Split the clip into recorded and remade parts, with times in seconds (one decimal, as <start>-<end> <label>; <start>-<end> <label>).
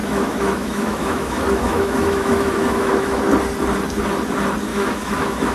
0.0-3.2 remade; 3.2-4.7 recorded; 4.7-5.5 remade